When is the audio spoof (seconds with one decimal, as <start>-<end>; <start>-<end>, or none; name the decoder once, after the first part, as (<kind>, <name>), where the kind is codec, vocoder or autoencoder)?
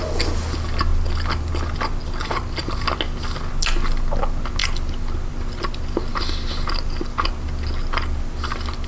none